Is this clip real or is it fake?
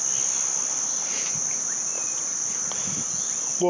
real